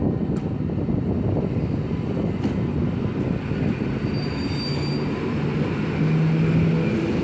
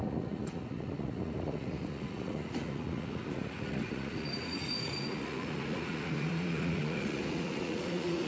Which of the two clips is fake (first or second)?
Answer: second